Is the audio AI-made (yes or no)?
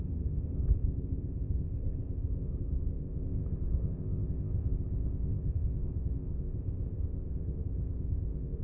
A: yes